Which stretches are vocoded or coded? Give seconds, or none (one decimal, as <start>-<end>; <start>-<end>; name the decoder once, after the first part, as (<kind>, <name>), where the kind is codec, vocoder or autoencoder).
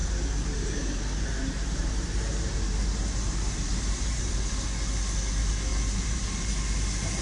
0.0-4.3 (vocoder, BigVGAN v2); 5.7-6.5